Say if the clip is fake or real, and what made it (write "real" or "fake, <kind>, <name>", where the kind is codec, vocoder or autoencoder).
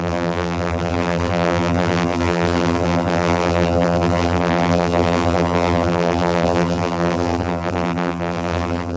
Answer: fake, vocoder, BigVGAN v2